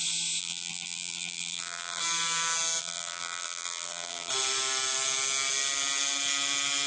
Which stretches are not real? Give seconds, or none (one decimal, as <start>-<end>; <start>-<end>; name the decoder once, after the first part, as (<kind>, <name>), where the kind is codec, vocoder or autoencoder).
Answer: 0.4-2.0 (vocoder, BigVGAN v2); 2.8-4.3